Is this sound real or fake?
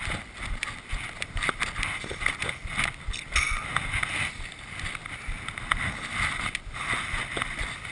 real